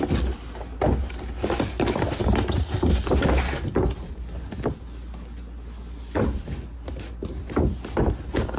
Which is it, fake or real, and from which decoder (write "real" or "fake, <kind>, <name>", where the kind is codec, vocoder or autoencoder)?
real